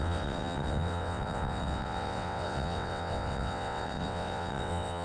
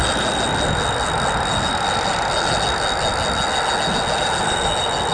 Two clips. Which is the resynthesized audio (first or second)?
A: first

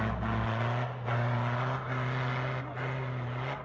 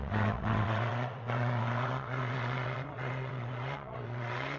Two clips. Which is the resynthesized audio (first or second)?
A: second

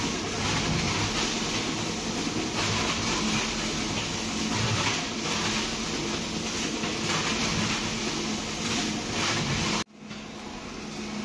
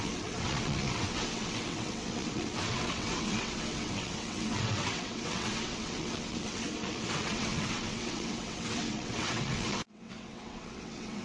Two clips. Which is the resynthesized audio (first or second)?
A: second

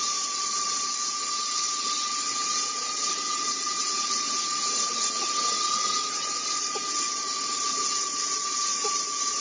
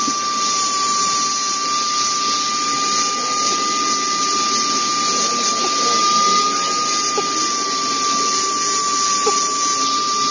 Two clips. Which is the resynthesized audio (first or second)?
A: first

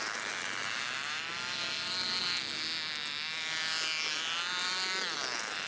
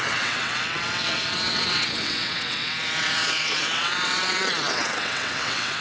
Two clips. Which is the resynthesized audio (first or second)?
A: second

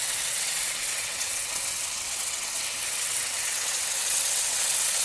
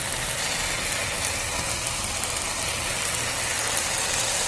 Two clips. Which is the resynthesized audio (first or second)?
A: first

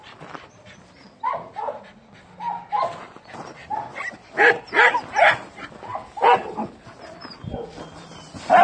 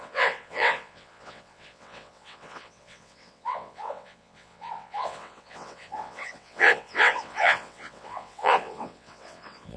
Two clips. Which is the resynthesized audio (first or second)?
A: second